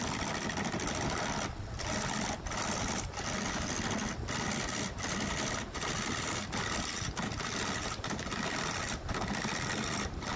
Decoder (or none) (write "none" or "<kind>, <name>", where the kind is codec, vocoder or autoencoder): none